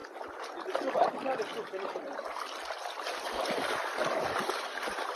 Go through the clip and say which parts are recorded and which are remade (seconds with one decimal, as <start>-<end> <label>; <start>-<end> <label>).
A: 0.0-5.2 recorded